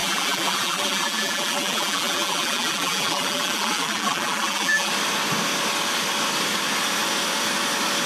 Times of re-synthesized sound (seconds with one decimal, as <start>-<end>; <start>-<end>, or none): 0.0-4.9